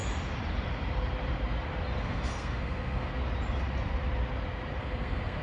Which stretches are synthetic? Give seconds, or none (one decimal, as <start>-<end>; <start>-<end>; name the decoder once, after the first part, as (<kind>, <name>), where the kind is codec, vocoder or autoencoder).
2.0-3.1 (codec, SNAC); 4.8-5.4

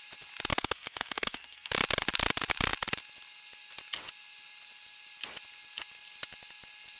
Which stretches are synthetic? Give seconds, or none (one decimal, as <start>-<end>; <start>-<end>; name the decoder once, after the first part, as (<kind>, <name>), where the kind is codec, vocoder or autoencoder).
0.5-1.7 (codec, SNAC)

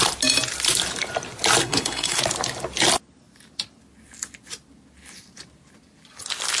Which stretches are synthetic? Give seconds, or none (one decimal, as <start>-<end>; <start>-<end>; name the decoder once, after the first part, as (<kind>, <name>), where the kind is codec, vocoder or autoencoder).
1.6-2.2 (codec, SNAC)